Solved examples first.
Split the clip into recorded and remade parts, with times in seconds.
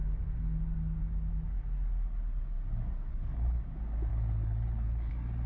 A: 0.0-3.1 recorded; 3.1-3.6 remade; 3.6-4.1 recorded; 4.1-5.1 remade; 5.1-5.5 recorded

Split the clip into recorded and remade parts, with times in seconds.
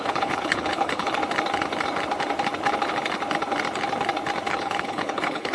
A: 0.0-1.2 remade; 1.2-4.5 recorded; 4.5-5.5 remade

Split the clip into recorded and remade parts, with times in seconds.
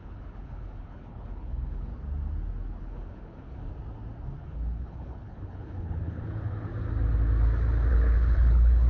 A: 0.0-1.9 remade; 1.9-2.8 recorded; 2.8-3.7 remade; 3.7-4.4 recorded; 4.4-6.7 remade; 6.7-7.9 recorded; 7.9-8.9 remade